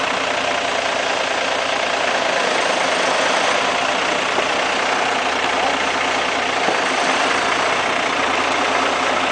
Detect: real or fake real